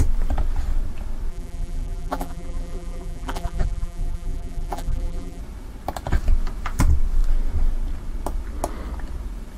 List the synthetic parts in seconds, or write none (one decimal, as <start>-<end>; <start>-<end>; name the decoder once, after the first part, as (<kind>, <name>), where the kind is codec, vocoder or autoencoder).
1.3-5.4 (vocoder, BigVGAN v2)